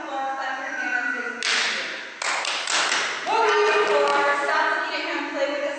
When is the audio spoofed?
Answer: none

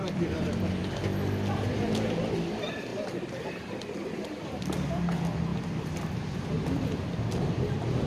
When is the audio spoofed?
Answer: 2.9-4.6 (vocoder, BigVGAN v2); 5.5-7.5

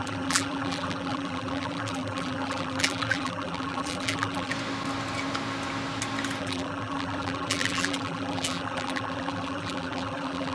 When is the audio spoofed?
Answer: 0.0-4.5 (vocoder, BigVGAN v2); 6.4-10.5

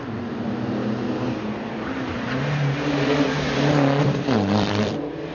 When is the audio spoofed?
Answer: 0.0-0.8 (vocoder, BigVGAN v2); 4.0-5.3

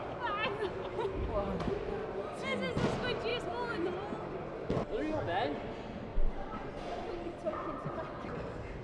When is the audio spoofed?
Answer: 6.1-6.7 (vocoder, BigVGAN v2)

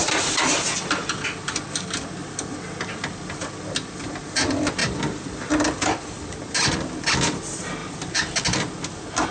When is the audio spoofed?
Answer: 4.8-5.3 (vocoder, BigVGAN v2); 7.8-8.4